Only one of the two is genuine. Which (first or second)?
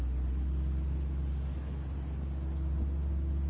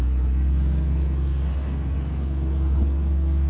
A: first